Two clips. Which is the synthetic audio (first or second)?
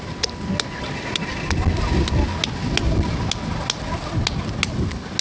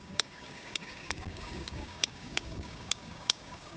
second